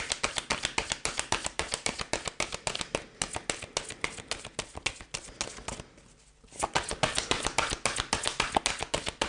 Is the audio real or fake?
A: real